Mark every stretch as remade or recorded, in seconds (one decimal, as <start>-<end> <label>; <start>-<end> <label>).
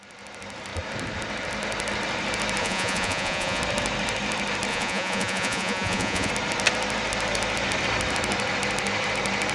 0.0-2.6 recorded; 2.6-3.6 remade; 3.6-4.7 recorded; 4.7-6.3 remade; 6.3-9.5 recorded